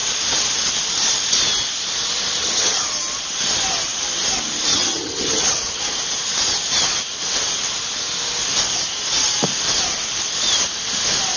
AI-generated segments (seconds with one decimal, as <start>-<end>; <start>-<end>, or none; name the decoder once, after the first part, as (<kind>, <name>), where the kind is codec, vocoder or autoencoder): 2.4-2.9 (vocoder, HiFi-GAN); 4.7-5.8